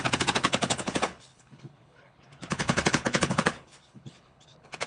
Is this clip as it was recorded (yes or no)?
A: no